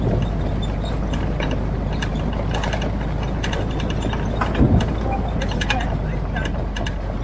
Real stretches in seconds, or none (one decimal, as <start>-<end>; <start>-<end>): 0.0-7.2